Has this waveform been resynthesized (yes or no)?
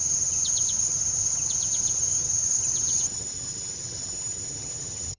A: yes